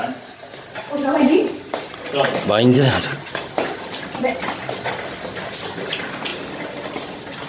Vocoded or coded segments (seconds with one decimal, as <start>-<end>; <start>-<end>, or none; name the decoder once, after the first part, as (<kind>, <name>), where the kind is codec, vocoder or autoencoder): 0.0-4.2 (vocoder, BigVGAN v2); 5.2-6.3